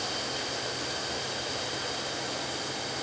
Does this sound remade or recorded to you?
recorded